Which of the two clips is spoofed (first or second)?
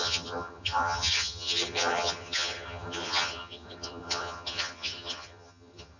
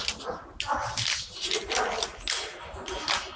first